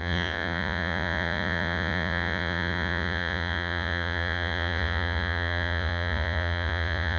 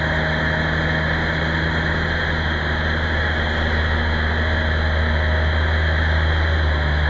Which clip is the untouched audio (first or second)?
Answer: second